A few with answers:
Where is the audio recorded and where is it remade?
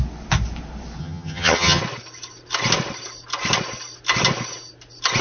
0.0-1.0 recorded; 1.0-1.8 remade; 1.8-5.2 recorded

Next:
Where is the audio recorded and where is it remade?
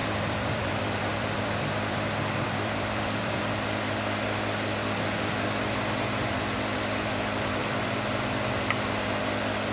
0.0-3.4 remade; 3.4-7.6 recorded; 7.6-8.5 remade; 8.5-9.7 recorded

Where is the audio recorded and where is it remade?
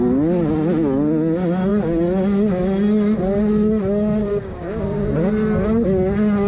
0.0-4.2 recorded; 4.2-5.1 remade; 5.1-6.5 recorded